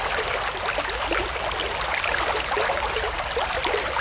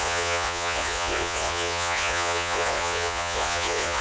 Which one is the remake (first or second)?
second